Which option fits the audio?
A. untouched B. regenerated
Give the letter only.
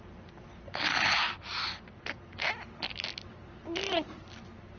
A